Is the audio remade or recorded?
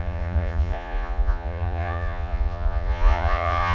remade